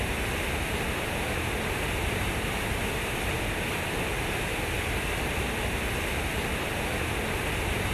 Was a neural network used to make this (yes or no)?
no